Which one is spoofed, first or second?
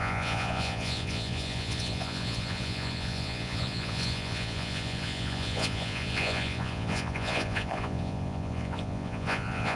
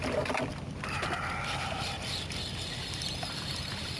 first